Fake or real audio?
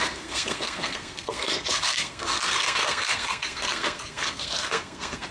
fake